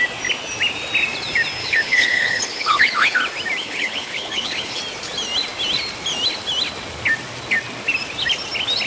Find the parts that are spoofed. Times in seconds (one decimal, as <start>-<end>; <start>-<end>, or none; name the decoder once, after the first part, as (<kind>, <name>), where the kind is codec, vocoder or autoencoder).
1.6-3.2 (codec, HILCodec); 3.6-4.8